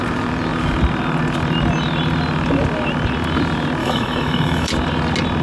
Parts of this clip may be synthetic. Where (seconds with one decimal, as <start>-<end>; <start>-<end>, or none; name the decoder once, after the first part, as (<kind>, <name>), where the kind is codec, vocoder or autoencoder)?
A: 3.8-4.7 (autoencoder, DAC-VAE)